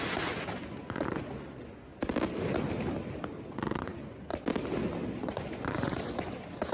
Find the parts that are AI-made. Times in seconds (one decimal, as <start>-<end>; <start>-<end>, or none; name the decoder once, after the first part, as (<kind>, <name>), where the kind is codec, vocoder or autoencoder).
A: 0.0-1.9 (vocoder, Vocos); 3.5-4.3; 5.1-6.7